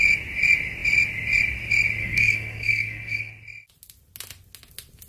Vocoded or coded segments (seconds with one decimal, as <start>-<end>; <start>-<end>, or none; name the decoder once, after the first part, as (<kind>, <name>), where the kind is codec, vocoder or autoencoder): 2.0-3.3 (codec, SNAC)